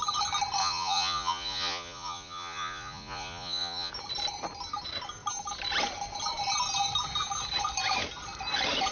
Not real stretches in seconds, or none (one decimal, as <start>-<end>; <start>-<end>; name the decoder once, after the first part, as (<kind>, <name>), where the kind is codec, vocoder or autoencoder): 0.6-3.9 (vocoder, Vocos)